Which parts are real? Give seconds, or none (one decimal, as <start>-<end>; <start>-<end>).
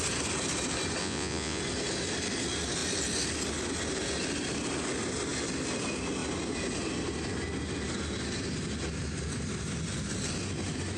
0.0-1.0; 1.6-11.0